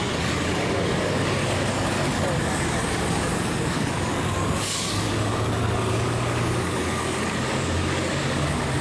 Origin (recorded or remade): remade